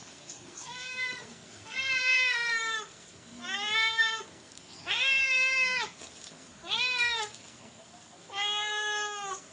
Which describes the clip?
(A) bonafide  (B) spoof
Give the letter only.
B